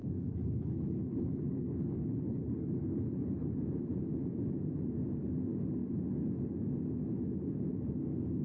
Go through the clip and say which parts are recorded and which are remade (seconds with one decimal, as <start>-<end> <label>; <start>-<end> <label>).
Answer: 0.0-3.6 remade; 3.6-8.4 recorded